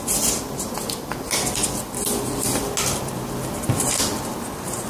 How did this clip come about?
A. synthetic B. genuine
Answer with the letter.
B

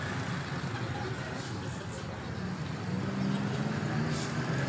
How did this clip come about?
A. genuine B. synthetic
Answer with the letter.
A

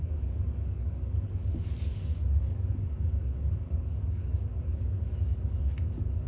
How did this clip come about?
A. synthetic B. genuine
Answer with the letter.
A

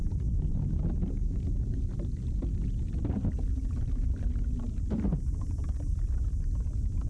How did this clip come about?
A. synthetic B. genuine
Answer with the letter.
B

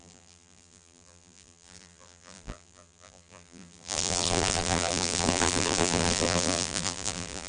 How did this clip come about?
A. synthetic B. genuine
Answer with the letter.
A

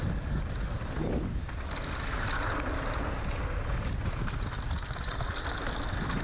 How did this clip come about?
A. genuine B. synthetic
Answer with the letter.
A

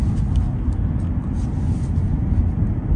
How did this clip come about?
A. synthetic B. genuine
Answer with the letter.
B